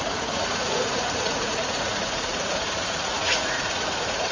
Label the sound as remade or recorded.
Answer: remade